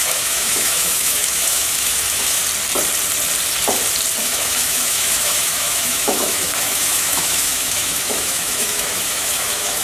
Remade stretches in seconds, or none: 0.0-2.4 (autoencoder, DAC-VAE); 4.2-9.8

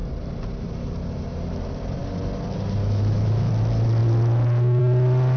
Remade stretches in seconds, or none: 2.8-3.5 (autoencoder, DAC-VAE)

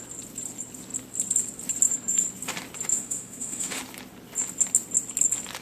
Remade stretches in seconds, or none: 2.9-3.8 (autoencoder, DAC-VAE)

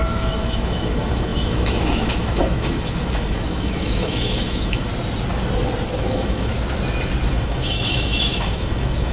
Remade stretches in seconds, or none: 0.0-4.9 (autoencoder, DAC-VAE); 6.1-6.5; 7.3-9.1

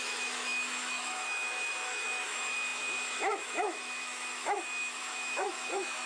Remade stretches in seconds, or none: 0.0-6.1 (autoencoder, DAC-VAE)

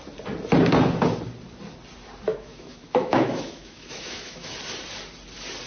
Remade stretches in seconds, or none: 2.3-4.5 (autoencoder, DAC-VAE)

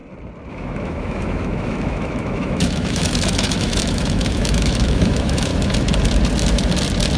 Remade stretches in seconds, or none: 0.5-5.5 (autoencoder, DAC-VAE)

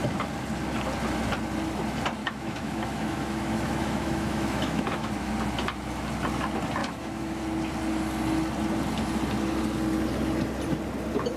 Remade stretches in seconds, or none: 2.2-5.3 (autoencoder, DAC-VAE); 6.8-7.4